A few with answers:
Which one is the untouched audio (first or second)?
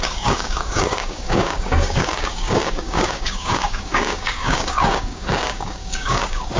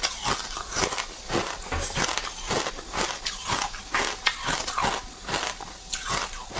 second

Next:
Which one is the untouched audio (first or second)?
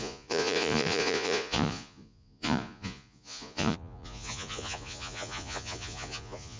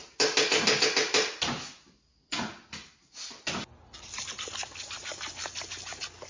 second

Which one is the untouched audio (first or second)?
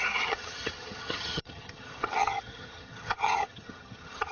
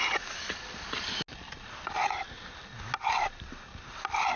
second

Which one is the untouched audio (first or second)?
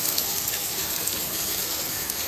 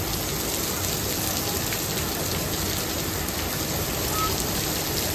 second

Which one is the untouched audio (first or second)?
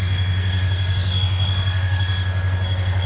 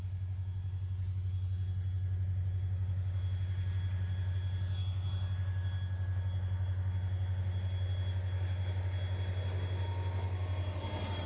second